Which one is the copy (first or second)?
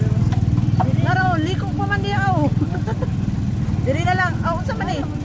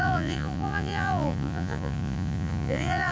second